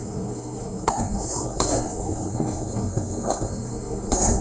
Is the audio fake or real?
fake